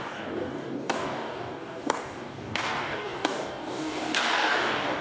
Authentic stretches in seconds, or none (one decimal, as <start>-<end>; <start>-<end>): none